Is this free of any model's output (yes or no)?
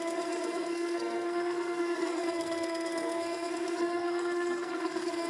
no